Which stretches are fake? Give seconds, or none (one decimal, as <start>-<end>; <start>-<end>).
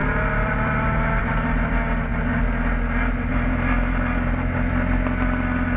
none